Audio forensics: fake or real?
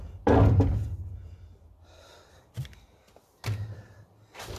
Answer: real